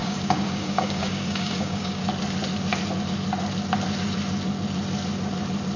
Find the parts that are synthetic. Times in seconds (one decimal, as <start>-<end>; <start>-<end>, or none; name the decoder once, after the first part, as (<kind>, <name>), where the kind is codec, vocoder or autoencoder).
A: 0.0-2.0 (codec, DAC)